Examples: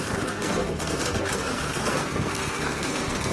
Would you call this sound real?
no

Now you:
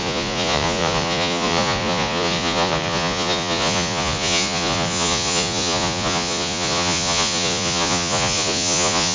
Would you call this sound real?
no